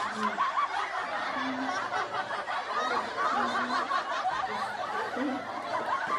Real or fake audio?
real